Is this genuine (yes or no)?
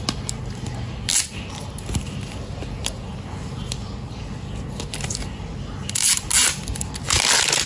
yes